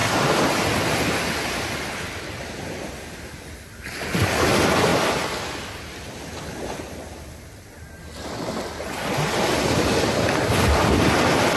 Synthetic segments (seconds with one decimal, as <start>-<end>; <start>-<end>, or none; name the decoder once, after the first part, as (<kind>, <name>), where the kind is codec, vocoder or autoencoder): none